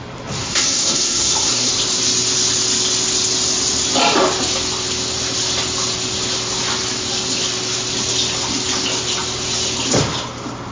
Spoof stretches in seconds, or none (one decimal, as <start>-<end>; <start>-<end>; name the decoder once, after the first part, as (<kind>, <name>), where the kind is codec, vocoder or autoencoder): 0.4-1.7 (codec, SNAC)